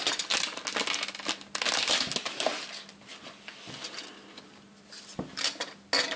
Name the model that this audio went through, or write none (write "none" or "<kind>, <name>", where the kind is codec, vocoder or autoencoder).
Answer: none